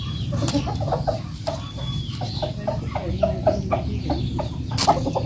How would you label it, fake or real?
real